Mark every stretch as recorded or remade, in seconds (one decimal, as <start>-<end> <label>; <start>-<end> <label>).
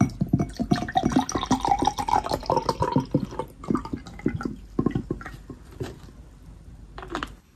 0.0-7.6 recorded